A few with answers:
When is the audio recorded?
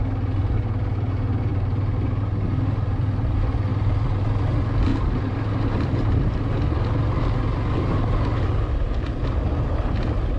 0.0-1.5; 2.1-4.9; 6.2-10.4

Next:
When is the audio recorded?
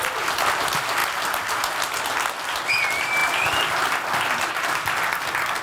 0.0-5.6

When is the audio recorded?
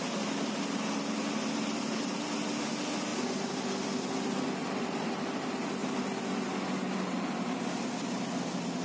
0.0-3.1; 3.6-4.6; 5.1-8.8